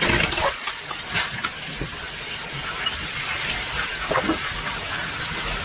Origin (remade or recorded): recorded